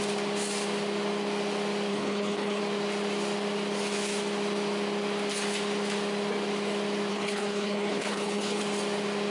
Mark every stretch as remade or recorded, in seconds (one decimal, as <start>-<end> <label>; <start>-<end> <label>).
0.0-1.9 recorded; 1.9-2.6 remade; 2.6-7.1 recorded; 7.1-8.6 remade; 8.6-9.3 recorded